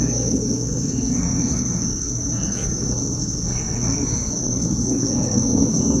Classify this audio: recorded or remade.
remade